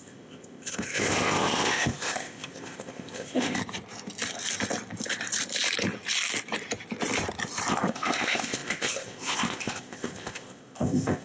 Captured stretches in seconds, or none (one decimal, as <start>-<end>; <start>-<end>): 3.6-7.7